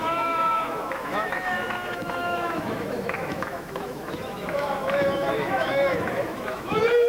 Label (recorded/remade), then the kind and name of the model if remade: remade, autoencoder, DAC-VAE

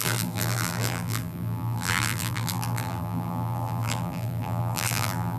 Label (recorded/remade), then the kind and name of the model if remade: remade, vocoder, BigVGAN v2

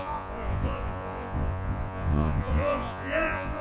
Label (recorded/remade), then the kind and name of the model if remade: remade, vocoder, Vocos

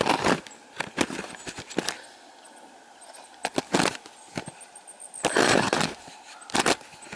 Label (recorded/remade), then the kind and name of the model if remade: recorded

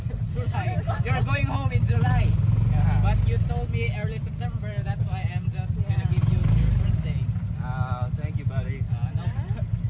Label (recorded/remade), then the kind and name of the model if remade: recorded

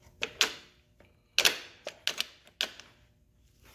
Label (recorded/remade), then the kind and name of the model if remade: recorded